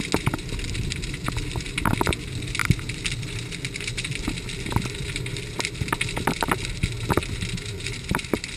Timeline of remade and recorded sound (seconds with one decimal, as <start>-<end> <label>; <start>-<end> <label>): 0.0-8.6 recorded